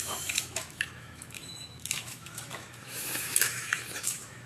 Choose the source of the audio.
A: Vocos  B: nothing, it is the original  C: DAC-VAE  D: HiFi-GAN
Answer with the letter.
C